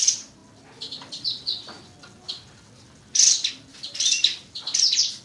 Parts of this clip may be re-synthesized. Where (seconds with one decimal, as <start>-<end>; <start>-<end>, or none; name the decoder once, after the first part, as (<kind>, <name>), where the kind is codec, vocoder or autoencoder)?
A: none

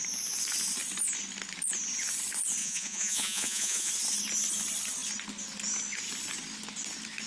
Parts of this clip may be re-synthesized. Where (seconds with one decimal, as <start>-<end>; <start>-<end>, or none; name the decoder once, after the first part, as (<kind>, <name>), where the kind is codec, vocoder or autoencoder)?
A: 2.6-3.9 (vocoder, Vocos)

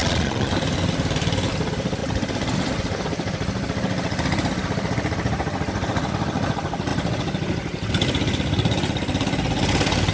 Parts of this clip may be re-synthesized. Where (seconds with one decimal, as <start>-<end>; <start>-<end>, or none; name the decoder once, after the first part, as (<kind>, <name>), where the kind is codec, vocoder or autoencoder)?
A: 0.0-0.5 (vocoder, Vocos)